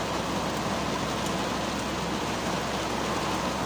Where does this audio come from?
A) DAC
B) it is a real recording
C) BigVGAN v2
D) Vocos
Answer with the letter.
B